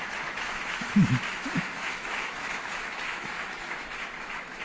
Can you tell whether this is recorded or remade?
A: remade